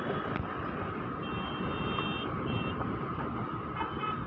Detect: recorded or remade recorded